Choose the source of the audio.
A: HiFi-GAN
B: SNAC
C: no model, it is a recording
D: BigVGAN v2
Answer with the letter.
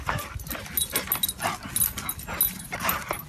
C